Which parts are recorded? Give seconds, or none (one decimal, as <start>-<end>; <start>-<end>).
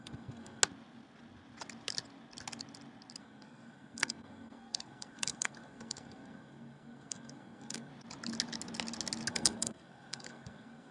0.6-3.2; 7.9-9.3